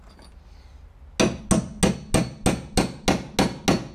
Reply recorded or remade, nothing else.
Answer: recorded